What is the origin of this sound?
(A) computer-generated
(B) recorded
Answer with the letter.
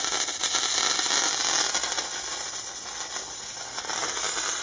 B